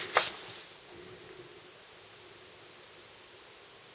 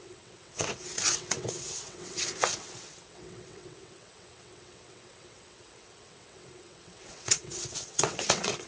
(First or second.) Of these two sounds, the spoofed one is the second